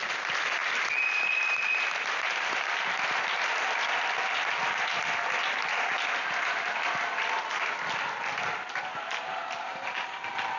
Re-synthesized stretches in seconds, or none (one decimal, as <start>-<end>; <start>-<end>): none